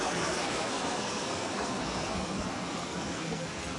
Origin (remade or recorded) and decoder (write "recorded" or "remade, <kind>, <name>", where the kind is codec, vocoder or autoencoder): remade, codec, SNAC